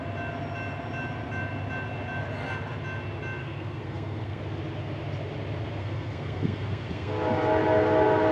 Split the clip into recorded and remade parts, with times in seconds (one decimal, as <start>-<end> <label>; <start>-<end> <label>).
0.0-3.4 recorded; 3.4-4.4 remade; 4.4-5.8 recorded; 5.8-7.1 remade; 7.1-8.3 recorded